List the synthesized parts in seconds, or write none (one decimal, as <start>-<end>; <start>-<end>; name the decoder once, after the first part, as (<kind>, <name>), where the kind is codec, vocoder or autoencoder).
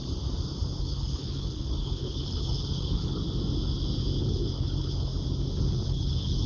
0.8-3.2 (codec, HILCodec); 4.2-5.1; 5.6-6.5